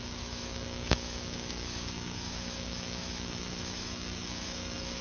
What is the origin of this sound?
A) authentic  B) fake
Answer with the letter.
B